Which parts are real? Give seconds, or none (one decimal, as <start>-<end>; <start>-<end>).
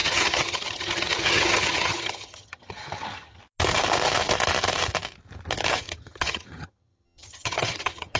3.4-5.7